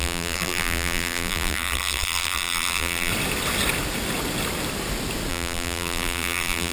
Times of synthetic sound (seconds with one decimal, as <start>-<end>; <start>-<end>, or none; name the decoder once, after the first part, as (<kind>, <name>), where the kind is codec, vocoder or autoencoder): 0.0-3.1 (vocoder, BigVGAN v2); 5.3-6.7